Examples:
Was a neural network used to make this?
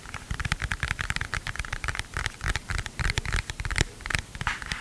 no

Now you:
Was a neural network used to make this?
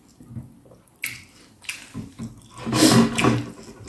no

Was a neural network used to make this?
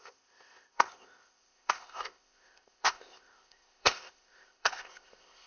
yes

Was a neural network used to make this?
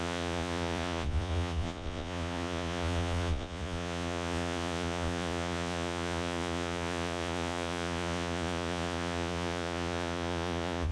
yes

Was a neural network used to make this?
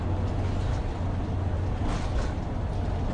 no